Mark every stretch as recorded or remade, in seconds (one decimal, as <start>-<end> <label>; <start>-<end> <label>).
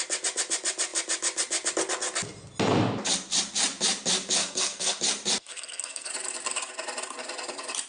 0.0-4.4 recorded; 4.4-5.0 remade; 5.0-5.4 recorded; 5.4-6.1 remade; 6.1-7.9 recorded